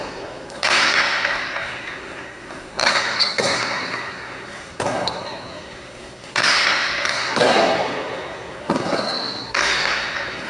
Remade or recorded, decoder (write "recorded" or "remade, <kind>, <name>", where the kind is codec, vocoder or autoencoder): remade, codec, SNAC